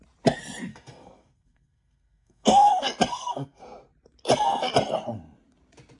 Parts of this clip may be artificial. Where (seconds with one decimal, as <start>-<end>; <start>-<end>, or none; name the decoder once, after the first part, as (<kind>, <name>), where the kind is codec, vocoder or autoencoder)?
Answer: 0.7-2.7 (codec, SNAC); 3.1-3.6

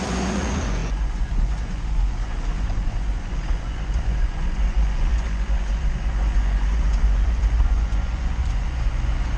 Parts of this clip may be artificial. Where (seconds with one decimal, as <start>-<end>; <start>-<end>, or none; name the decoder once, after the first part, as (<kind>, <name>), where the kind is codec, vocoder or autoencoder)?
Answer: 0.0-9.4 (vocoder, Vocos)

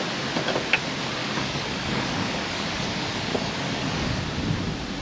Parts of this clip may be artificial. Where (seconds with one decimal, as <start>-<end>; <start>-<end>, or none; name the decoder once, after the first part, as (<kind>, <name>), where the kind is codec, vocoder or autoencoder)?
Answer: 1.2-4.2 (codec, DAC)

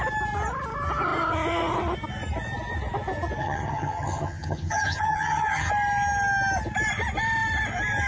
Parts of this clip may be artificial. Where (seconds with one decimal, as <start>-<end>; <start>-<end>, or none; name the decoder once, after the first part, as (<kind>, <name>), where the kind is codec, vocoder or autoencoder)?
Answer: 3.4-5.7 (vocoder, HiFi-GAN)

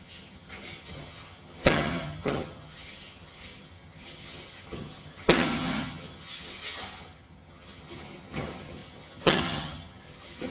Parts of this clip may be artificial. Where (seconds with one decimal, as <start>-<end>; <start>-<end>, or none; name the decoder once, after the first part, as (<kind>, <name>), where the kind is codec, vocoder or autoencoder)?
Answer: 0.0-10.5 (vocoder, HiFi-GAN)

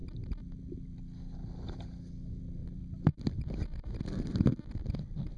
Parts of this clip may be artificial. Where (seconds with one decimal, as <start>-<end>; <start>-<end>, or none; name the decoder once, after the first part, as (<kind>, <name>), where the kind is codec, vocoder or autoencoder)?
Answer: 0.0-0.7 (vocoder, BigVGAN v2); 2.6-5.4

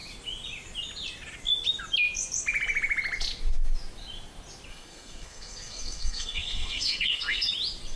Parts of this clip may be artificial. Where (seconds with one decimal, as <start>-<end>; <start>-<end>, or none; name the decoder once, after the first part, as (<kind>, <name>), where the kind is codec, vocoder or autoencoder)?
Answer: 4.7-7.5 (codec, SNAC)